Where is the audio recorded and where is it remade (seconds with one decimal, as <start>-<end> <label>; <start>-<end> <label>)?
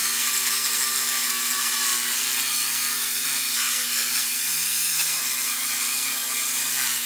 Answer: 0.0-7.1 remade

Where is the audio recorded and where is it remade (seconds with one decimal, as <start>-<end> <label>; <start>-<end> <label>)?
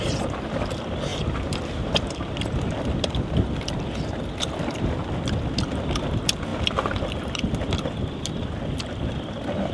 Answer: 0.0-9.7 recorded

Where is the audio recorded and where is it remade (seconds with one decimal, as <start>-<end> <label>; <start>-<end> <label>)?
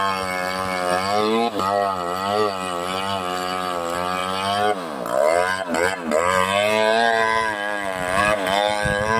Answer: 0.0-9.2 recorded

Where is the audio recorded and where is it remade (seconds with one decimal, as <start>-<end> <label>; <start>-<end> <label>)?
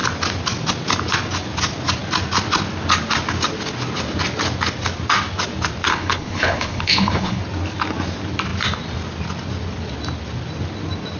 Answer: 0.0-5.9 recorded; 5.9-7.4 remade; 7.4-11.2 recorded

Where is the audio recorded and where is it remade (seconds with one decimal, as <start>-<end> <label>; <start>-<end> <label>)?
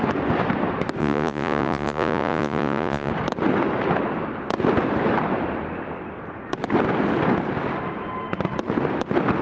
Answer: 0.0-1.0 recorded; 1.0-3.1 remade; 3.1-9.4 recorded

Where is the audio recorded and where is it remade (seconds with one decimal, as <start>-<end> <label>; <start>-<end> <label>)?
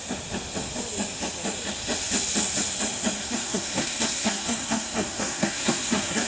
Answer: 0.0-3.2 recorded; 3.2-6.3 remade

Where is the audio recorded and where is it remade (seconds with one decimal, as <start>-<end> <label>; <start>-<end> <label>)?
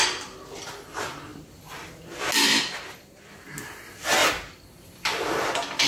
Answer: 0.0-5.9 recorded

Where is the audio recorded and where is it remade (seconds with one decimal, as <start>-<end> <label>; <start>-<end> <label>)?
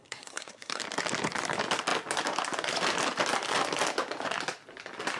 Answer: 0.0-0.8 remade; 0.8-5.2 recorded